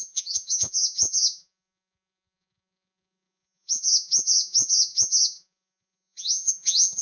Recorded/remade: remade